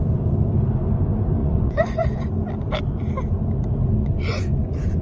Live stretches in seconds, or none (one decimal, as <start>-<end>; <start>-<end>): 0.0-1.4; 2.3-4.0